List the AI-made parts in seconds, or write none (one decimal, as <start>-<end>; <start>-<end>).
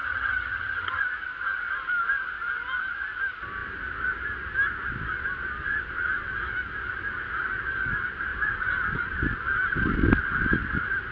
0.0-1.0